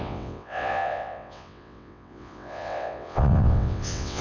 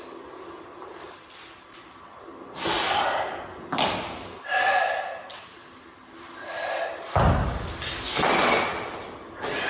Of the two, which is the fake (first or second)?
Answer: first